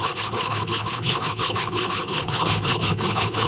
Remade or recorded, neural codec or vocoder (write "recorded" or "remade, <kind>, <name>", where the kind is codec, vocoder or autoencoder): remade, codec, HILCodec